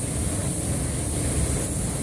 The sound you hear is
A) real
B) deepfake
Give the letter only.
A